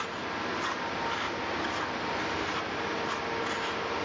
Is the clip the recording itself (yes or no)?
yes